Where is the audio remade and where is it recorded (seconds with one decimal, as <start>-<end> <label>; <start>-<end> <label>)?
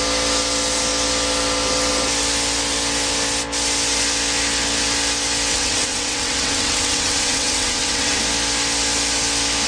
0.0-5.5 recorded; 5.5-8.2 remade; 8.2-9.7 recorded